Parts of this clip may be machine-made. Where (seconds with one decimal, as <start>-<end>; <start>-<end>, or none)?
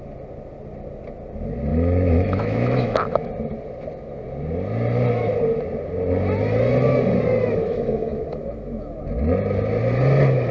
1.7-3.3; 7.6-9.0